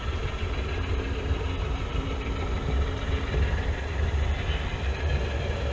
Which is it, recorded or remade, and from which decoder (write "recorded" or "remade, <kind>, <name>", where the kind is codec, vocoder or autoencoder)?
recorded